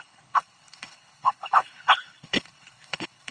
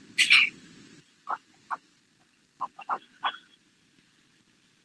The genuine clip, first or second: second